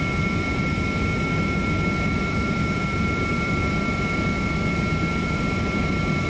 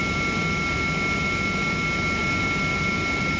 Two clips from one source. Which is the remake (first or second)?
first